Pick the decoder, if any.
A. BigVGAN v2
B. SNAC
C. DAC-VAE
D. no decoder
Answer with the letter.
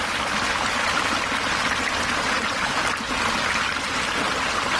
D